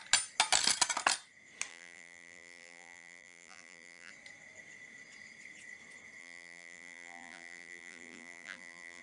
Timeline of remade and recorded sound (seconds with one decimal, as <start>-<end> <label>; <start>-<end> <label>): 0.0-1.7 recorded; 1.7-4.1 remade; 4.1-6.2 recorded; 6.2-9.0 remade